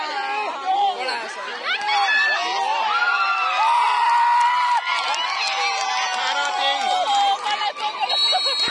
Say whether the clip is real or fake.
real